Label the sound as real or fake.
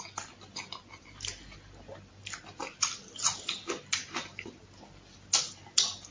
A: real